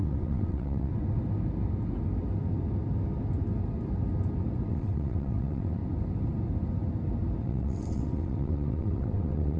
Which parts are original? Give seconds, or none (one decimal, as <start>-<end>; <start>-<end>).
0.9-4.7; 5.8-7.4